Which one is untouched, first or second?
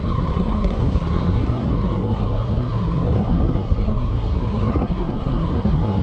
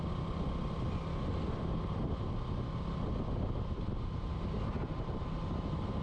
second